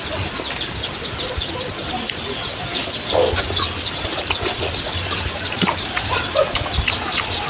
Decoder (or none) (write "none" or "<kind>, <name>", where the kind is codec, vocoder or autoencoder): none